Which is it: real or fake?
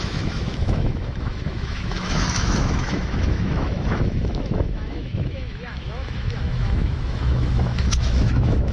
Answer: fake